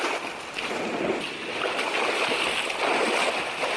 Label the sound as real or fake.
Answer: real